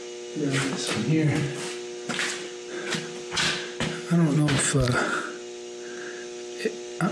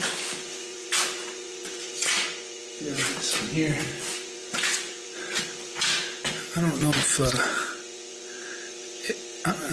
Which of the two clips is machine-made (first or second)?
second